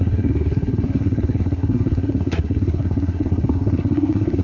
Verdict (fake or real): fake